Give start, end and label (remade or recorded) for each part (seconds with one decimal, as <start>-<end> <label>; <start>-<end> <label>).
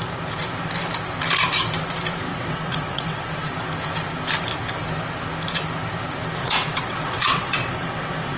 0.0-2.3 recorded; 2.3-3.5 remade; 3.5-6.4 recorded; 6.4-8.4 remade